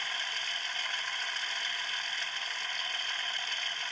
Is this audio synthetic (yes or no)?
no